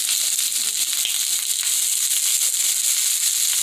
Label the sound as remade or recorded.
recorded